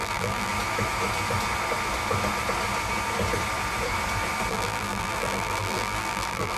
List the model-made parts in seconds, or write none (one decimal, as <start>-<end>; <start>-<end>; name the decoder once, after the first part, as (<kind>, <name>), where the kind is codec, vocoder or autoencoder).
0.0-0.5 (vocoder, BigVGAN v2); 4.5-6.6